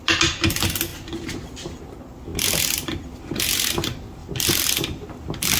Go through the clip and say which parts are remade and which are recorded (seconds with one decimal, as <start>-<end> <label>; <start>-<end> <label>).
0.0-4.2 recorded; 4.2-5.6 remade